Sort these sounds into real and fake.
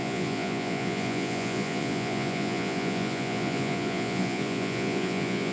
fake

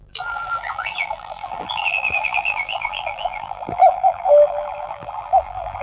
fake